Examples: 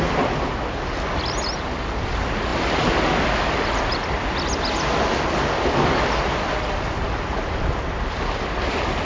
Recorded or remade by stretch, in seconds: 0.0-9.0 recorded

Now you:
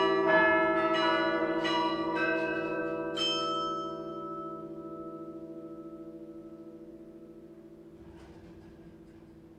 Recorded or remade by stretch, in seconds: 0.0-1.4 recorded; 1.4-2.8 remade; 2.8-9.6 recorded

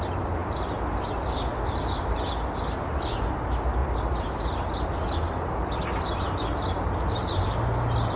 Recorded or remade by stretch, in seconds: 0.0-3.8 recorded; 3.8-4.5 remade; 4.5-8.2 recorded

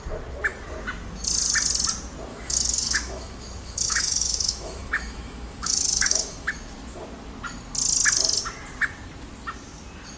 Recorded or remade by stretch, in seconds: 0.0-2.3 recorded; 2.3-6.5 remade; 6.5-10.2 recorded

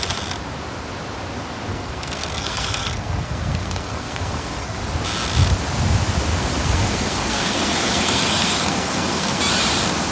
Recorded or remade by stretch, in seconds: 0.0-1.7 recorded; 1.7-4.8 remade; 4.8-6.3 recorded; 6.3-9.4 remade; 9.4-10.1 recorded